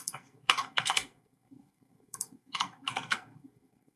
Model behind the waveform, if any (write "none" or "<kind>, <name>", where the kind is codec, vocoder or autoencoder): codec, SNAC